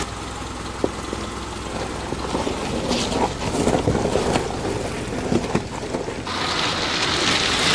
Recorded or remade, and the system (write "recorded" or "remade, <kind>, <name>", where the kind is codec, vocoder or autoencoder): recorded